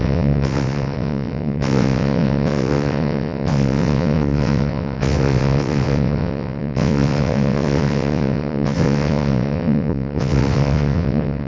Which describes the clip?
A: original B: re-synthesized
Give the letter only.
B